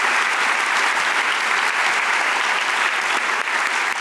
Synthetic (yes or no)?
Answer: no